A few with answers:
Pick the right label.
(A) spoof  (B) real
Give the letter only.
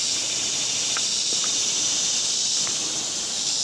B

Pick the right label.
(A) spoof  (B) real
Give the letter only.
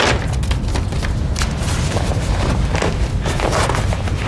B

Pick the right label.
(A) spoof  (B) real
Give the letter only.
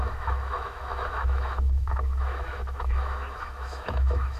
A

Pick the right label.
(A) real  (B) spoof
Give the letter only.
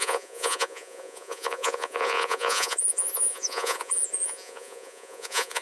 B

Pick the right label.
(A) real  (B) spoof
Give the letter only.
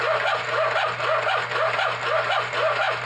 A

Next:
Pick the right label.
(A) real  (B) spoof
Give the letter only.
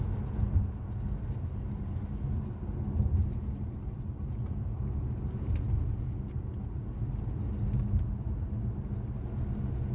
A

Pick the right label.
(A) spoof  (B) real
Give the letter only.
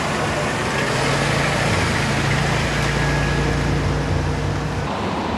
B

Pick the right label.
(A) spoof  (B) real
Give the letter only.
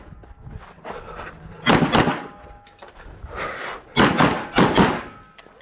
B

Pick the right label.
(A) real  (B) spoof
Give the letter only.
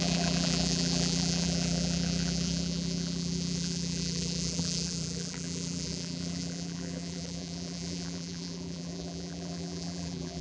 B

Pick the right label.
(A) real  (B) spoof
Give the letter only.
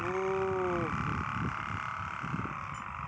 A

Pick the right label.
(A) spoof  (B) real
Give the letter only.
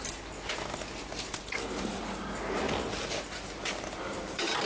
B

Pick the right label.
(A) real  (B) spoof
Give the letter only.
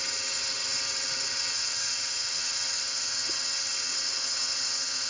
B